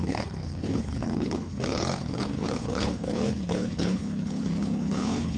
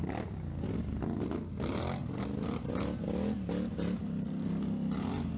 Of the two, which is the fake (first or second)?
first